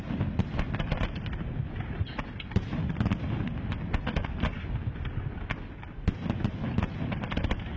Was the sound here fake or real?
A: real